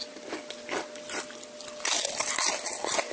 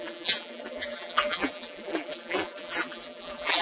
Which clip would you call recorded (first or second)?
first